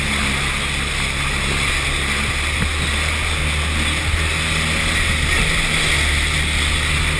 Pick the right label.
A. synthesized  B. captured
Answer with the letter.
B